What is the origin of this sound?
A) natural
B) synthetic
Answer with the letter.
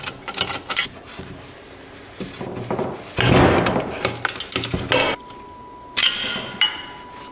A